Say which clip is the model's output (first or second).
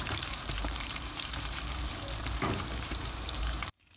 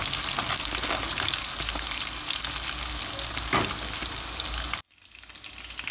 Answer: first